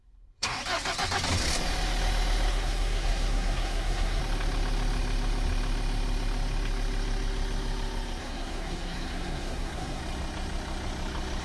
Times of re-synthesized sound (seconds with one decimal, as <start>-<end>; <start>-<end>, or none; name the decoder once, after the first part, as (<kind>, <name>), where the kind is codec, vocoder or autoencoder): 0.0-0.6 (codec, SNAC); 2.5-4.2; 8.2-10.0